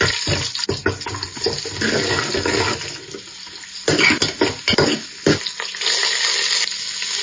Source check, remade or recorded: recorded